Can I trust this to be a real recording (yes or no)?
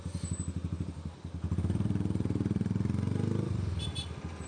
no